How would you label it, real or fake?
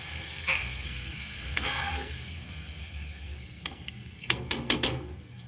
fake